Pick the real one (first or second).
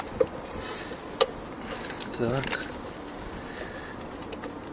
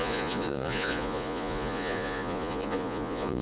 first